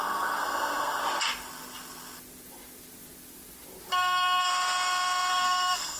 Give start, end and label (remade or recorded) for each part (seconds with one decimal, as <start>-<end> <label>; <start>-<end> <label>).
0.0-1.0 remade; 1.0-3.9 recorded; 3.9-4.5 remade; 4.5-5.3 recorded; 5.3-6.0 remade